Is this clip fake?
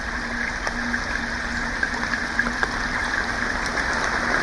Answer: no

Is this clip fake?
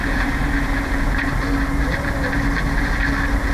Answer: no